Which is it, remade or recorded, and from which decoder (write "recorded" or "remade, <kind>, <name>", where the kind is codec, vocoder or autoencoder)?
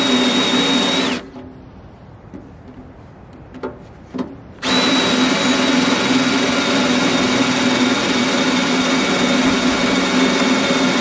recorded